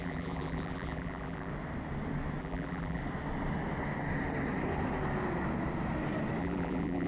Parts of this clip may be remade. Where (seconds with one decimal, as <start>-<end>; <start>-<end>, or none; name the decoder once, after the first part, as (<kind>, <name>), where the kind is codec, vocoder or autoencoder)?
0.0-1.5 (vocoder, BigVGAN v2); 2.4-3.0; 6.4-7.1